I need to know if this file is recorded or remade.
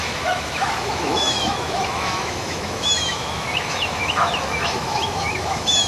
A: remade